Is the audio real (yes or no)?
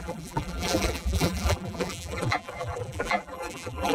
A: no